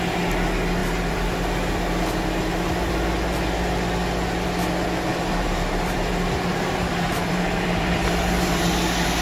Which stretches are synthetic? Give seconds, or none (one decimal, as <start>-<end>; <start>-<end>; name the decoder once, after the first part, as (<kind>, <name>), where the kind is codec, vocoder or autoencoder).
0.8-1.3 (vocoder, BigVGAN v2); 5.1-6.1; 6.5-8.7